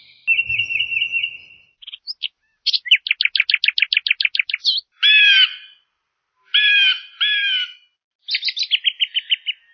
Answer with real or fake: real